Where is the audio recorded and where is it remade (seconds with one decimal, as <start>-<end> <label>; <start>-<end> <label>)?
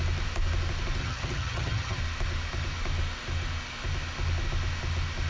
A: 0.0-1.0 recorded; 1.0-2.0 remade; 2.0-5.3 recorded